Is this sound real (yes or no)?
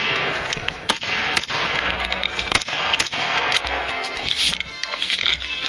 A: no